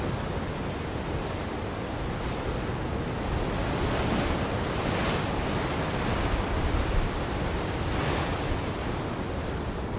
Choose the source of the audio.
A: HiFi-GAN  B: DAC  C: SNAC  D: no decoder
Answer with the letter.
D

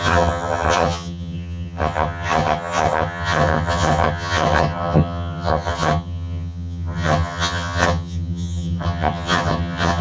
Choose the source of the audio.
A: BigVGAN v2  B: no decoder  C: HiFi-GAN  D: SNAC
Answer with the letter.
C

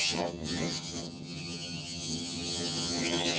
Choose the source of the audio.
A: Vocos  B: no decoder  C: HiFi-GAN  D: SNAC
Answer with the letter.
C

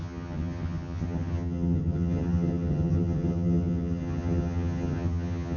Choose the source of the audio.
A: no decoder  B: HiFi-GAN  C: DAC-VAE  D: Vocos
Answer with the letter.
B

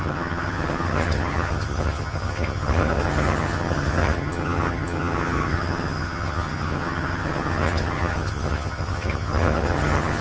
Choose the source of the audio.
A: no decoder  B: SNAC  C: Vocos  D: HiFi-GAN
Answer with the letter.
D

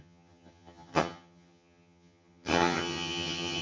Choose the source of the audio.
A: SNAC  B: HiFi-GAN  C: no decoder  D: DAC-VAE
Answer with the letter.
B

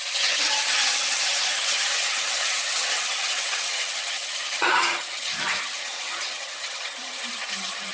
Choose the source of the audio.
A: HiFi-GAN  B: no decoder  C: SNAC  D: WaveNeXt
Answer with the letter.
A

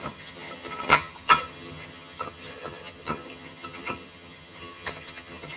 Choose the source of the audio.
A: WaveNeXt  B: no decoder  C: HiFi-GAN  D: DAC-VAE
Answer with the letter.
C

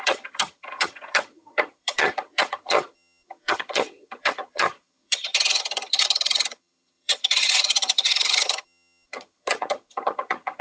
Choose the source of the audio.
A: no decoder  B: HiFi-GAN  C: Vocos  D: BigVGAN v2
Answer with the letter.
B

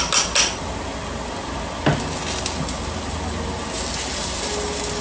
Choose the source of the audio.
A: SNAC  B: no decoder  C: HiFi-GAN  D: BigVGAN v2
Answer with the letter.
B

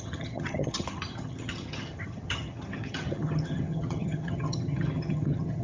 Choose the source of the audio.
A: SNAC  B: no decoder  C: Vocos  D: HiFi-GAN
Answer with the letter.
D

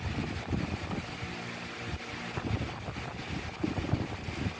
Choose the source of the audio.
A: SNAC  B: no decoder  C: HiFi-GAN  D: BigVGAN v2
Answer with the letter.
B